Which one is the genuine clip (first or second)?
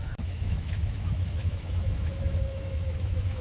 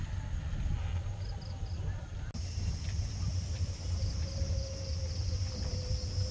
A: second